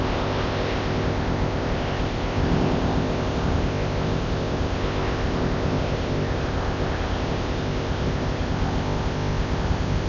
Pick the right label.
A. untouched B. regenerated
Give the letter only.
B